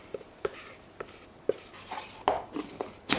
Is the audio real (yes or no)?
yes